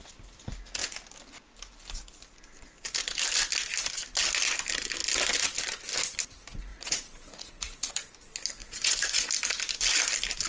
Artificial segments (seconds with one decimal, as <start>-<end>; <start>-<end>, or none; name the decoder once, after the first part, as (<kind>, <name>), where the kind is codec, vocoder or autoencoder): 6.7-7.9 (vocoder, Vocos); 8.6-9.3